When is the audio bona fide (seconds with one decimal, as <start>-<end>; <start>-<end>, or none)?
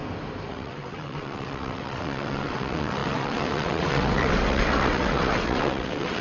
0.0-0.5